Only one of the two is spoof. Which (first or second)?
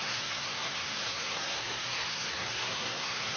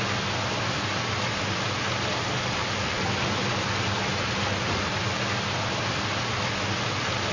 first